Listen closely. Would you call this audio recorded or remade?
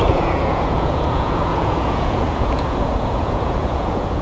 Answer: remade